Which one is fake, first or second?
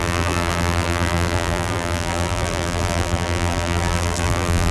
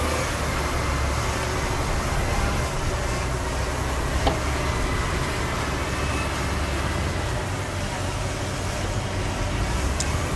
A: first